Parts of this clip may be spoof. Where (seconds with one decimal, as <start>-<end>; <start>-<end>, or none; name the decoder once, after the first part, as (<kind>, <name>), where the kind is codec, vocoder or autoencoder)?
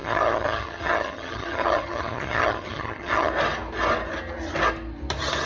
0.0-3.3 (vocoder, HiFi-GAN)